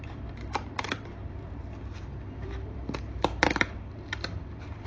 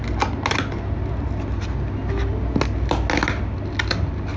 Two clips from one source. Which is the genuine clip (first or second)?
second